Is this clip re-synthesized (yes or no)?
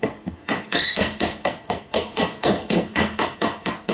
yes